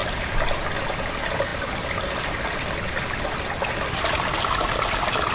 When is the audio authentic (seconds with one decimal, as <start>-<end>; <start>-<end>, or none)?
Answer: 0.0-5.3